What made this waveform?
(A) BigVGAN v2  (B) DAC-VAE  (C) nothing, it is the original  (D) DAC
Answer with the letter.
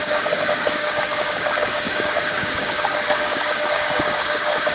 D